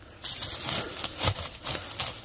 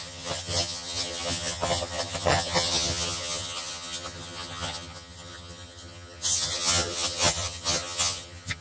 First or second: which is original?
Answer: first